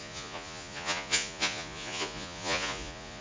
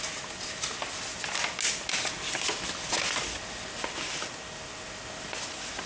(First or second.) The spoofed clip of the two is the first